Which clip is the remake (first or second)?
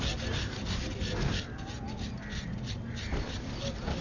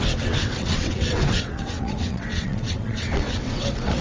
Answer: second